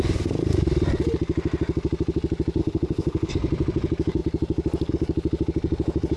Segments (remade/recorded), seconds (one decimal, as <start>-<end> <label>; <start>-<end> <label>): 0.0-2.6 recorded; 2.6-3.3 remade; 3.3-6.2 recorded